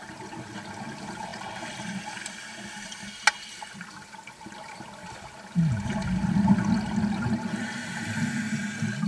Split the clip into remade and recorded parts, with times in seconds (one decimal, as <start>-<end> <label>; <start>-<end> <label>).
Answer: 0.0-9.1 recorded